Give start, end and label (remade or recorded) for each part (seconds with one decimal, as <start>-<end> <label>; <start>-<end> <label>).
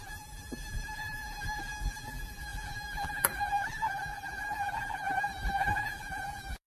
0.0-6.7 remade